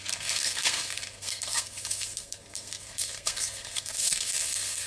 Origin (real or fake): fake